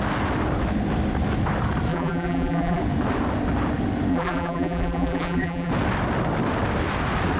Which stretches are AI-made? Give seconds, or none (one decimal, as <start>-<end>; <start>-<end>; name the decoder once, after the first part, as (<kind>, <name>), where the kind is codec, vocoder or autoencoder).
1.9-2.8 (vocoder, BigVGAN v2); 4.1-5.7